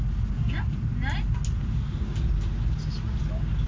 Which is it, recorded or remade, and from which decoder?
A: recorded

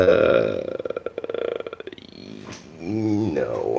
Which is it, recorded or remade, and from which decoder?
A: remade, vocoder, BigVGAN v2